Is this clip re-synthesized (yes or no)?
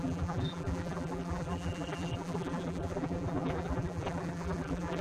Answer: yes